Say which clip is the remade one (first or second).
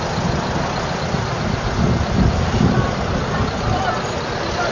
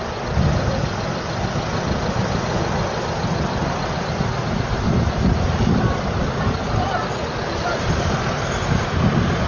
second